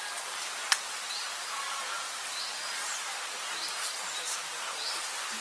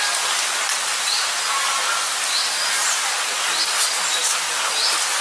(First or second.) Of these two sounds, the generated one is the first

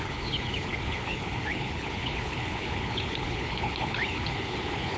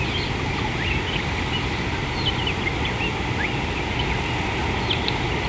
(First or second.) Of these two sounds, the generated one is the first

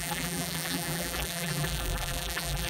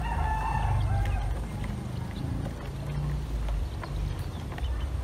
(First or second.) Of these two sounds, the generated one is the first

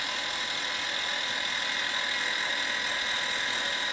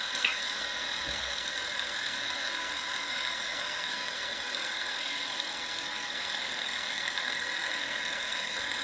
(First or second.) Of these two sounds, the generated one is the second